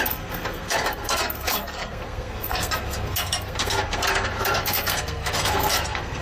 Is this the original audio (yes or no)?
no